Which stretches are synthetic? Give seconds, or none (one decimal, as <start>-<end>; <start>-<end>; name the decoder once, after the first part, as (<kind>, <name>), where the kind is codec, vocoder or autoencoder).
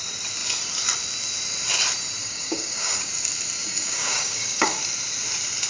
2.2-3.1 (codec, DAC); 3.6-4.8